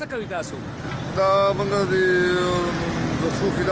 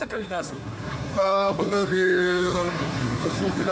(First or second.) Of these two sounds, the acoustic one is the first